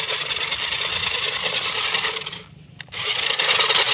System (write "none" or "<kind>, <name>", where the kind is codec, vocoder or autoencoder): none